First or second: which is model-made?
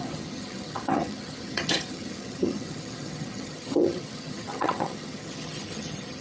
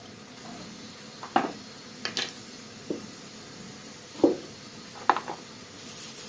first